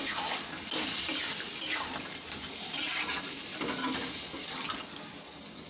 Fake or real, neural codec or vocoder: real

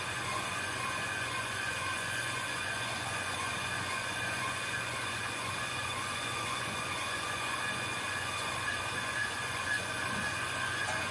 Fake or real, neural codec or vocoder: fake, vocoder, Vocos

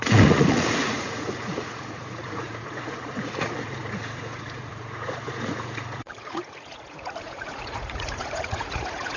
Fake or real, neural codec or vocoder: fake, vocoder, Vocos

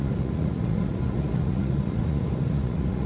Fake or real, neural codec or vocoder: fake, vocoder, Vocos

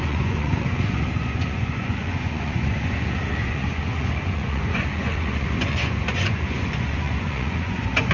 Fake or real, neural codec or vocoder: fake, vocoder, Vocos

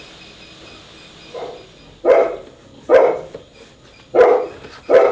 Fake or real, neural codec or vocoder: real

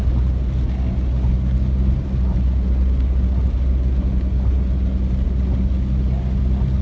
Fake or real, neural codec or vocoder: real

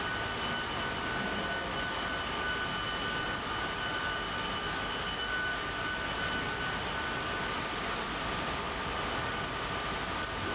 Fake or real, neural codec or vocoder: real